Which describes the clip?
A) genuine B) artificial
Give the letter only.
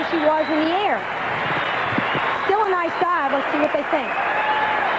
A